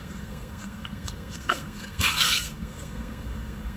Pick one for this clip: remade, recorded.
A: remade